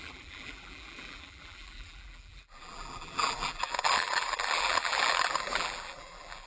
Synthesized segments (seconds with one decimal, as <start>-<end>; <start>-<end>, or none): 0.0-6.5